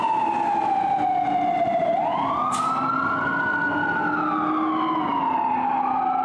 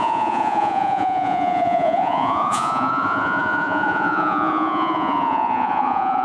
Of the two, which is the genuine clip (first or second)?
first